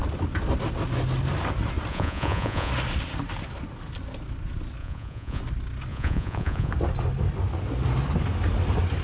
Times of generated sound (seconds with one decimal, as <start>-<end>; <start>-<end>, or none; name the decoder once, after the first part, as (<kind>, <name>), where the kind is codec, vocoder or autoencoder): 1.9-2.7 (vocoder, Vocos); 4.8-5.4; 5.9-6.7